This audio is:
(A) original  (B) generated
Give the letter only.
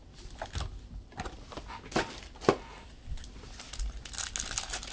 A